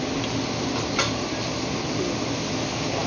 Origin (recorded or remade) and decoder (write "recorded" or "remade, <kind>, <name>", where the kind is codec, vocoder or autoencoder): recorded